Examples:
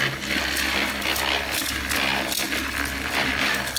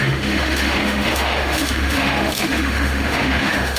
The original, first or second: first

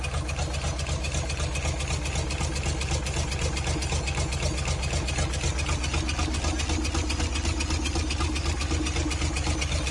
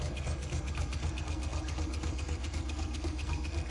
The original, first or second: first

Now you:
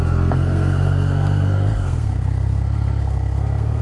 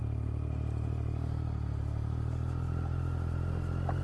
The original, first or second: second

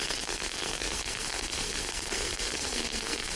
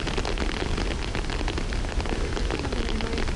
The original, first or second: second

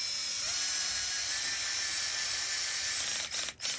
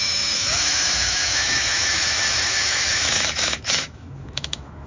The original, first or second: first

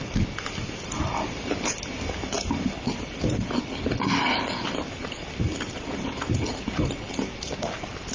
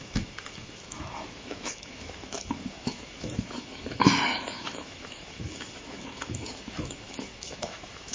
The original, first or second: first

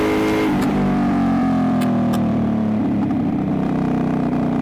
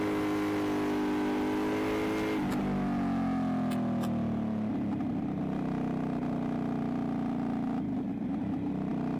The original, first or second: second